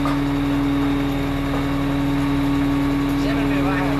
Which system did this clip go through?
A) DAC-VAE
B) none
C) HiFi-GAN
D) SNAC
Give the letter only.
B